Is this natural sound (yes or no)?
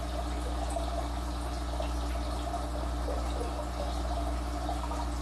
yes